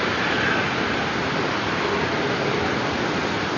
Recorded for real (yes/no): yes